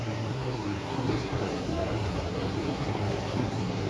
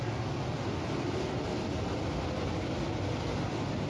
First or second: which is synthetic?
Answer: first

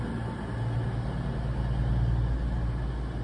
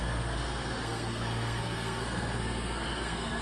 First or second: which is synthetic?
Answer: second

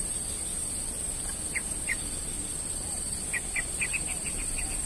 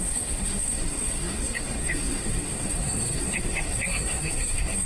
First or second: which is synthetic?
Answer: second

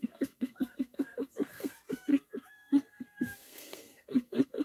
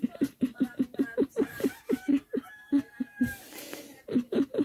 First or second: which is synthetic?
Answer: first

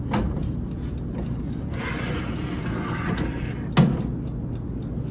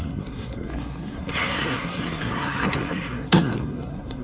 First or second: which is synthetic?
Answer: second